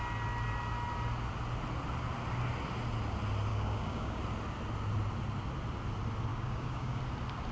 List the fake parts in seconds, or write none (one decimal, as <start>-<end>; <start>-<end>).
3.5-4.2; 6.3-7.0